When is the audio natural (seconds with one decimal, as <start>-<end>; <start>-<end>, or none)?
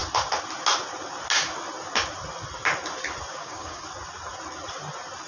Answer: 0.0-3.3; 3.8-5.3